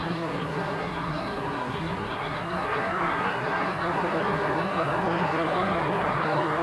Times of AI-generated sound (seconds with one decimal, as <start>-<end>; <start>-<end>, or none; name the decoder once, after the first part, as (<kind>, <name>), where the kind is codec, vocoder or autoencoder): 0.0-6.6 (codec, SNAC)